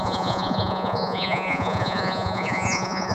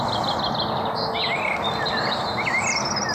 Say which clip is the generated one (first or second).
first